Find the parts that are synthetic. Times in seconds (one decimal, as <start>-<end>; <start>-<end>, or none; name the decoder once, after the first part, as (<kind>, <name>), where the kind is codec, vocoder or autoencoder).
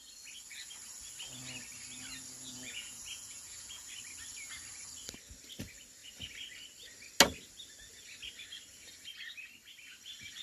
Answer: 2.4-3.9 (vocoder, Vocos)